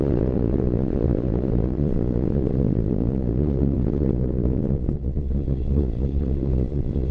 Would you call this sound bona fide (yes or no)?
no